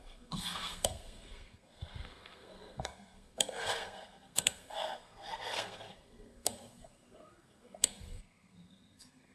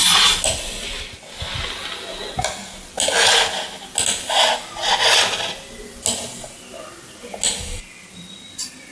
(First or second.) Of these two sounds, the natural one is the second